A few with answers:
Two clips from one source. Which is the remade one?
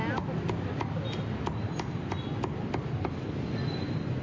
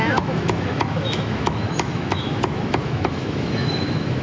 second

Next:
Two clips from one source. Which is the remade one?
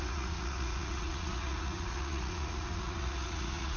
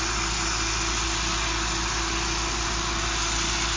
first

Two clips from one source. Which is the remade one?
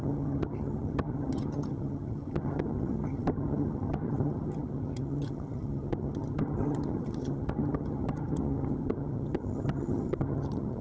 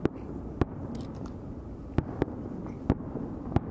first